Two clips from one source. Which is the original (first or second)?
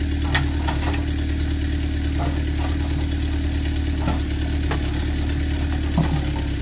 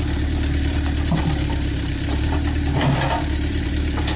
first